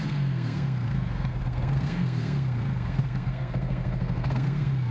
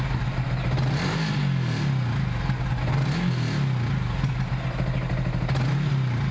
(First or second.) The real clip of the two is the second